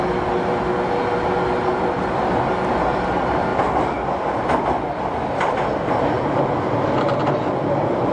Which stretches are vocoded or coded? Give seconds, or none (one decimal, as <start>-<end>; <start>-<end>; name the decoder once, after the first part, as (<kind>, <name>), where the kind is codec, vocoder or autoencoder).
none